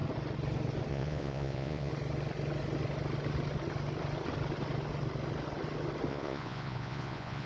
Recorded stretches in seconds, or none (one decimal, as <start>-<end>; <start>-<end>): 0.0-0.9; 1.9-6.1

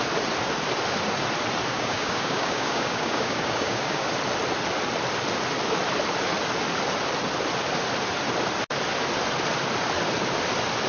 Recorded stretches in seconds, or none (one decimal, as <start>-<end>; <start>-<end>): 0.0-1.7; 4.1-10.9

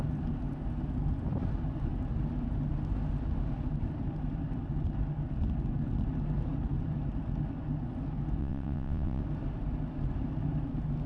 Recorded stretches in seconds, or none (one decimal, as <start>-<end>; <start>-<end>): 0.0-8.4; 9.2-11.1

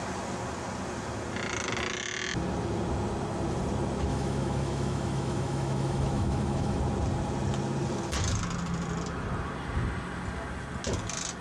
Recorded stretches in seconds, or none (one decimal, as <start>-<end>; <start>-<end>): 0.0-4.1; 6.8-11.4

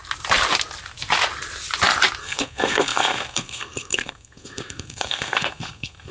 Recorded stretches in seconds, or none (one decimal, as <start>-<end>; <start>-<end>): 0.0-2.2

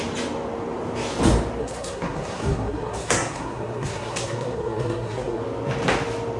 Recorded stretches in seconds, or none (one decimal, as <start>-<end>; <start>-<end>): 0.0-1.6; 5.4-6.4